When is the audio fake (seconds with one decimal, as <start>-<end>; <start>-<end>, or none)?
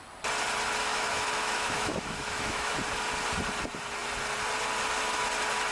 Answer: 0.9-2.8